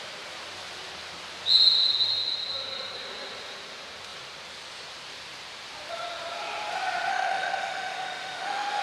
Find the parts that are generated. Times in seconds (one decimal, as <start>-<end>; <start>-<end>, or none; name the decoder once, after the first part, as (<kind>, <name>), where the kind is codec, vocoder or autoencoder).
7.1-8.8 (autoencoder, DAC-VAE)

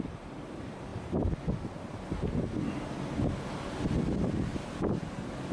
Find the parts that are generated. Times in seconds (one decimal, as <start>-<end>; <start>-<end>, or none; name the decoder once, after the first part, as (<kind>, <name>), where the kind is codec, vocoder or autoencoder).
none

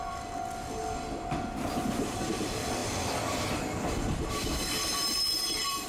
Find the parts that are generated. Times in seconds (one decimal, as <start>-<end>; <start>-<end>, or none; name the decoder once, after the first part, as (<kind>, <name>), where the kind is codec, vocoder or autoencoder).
none

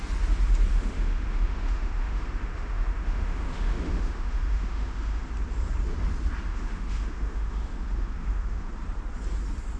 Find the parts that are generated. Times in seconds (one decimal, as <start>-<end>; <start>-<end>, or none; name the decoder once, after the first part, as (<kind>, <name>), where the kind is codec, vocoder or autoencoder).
0.7-5.3 (autoencoder, DAC-VAE); 6.5-8.7

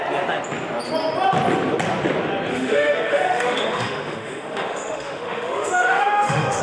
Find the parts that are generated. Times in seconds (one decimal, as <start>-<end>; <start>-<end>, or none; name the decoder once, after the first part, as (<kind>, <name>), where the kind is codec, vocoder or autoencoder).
2.5-6.6 (autoencoder, DAC-VAE)

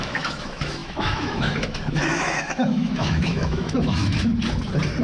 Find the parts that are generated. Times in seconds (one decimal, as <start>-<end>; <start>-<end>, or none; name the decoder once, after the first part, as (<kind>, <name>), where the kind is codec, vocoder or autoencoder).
0.0-4.3 (autoencoder, DAC-VAE)

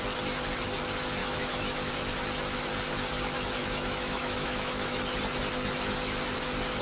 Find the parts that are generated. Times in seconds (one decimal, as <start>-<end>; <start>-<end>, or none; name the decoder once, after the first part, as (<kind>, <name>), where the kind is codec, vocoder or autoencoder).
1.2-1.9 (autoencoder, DAC-VAE); 3.6-5.0

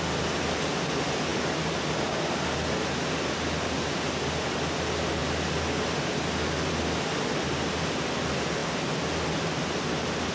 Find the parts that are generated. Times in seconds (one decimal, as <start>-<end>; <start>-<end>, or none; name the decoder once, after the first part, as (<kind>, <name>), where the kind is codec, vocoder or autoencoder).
none